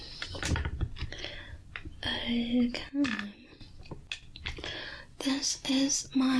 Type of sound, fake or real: real